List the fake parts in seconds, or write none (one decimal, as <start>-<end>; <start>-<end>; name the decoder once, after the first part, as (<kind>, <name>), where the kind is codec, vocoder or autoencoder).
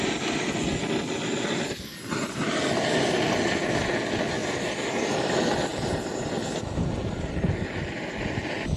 none